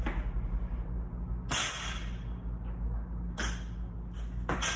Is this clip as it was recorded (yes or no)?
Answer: yes